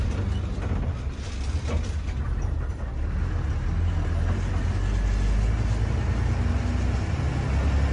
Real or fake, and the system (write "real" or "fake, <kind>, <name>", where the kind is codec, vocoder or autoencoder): real